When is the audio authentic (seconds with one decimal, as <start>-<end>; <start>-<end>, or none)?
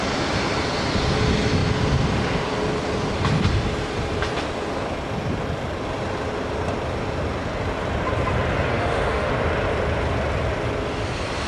0.0-8.7; 9.3-11.5